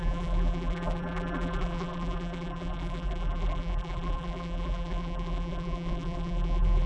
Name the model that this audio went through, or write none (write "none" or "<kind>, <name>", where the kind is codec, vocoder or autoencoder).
vocoder, BigVGAN v2